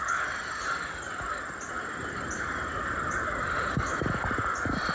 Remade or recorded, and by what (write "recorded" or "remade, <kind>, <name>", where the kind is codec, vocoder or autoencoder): remade, vocoder, BigVGAN v2